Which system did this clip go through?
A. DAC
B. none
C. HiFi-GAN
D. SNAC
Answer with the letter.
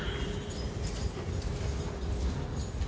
B